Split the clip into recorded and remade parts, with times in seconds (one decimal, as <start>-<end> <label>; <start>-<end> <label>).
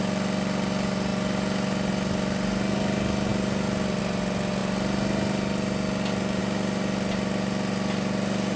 0.0-8.6 recorded